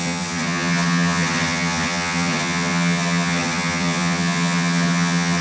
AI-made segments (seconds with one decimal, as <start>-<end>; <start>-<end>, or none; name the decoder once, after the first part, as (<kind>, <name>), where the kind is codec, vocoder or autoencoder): 0.0-5.4 (vocoder, HiFi-GAN)